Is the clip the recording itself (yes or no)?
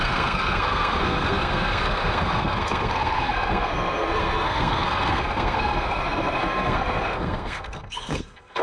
no